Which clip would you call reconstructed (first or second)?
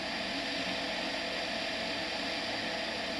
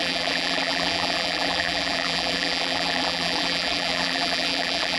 second